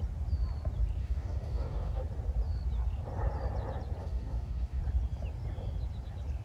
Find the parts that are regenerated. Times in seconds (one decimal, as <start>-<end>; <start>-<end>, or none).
1.0-2.0; 4.0-4.8